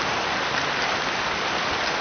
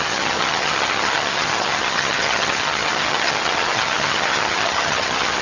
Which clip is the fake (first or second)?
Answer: second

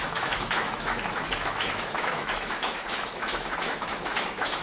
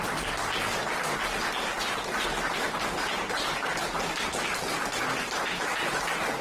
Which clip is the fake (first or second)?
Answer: first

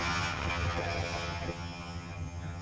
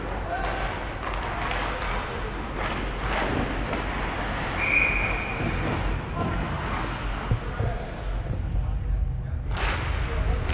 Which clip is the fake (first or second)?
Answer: first